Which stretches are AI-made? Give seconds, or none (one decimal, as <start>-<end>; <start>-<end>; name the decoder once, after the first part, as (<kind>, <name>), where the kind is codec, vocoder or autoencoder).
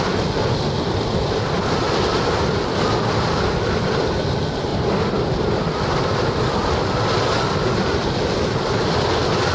4.7-6.4 (vocoder, BigVGAN v2)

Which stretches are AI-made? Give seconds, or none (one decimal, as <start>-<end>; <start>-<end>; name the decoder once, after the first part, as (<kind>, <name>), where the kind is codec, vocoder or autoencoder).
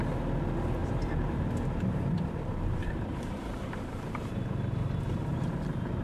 0.8-4.4 (vocoder, BigVGAN v2); 5.3-6.0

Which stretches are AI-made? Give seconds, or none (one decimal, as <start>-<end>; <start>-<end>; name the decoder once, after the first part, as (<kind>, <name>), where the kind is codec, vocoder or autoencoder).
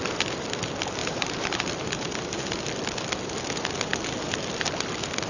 1.0-2.6 (vocoder, BigVGAN v2)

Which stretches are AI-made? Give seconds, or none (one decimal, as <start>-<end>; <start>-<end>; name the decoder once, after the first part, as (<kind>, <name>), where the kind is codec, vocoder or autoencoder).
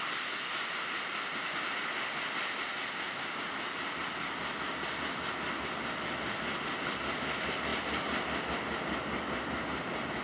none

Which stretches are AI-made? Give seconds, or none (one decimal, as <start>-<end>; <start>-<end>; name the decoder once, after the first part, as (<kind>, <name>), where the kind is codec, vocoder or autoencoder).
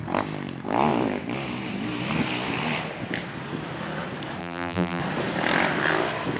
4.4-5.0 (vocoder, BigVGAN v2)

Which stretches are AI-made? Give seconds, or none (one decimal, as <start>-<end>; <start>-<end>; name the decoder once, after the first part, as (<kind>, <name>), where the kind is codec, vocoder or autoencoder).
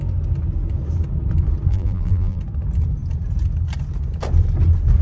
1.7-2.4 (vocoder, BigVGAN v2)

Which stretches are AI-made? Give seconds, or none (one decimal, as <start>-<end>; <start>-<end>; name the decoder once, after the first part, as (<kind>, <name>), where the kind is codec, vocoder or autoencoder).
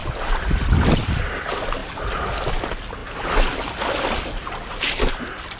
none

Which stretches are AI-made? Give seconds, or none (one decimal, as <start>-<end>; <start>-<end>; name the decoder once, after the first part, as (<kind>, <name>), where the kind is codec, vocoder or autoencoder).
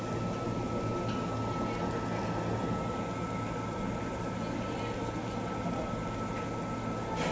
5.6-6.4 (vocoder, BigVGAN v2)